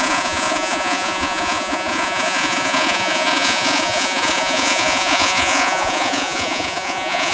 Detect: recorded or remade remade